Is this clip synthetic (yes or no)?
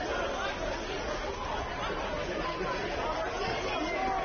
no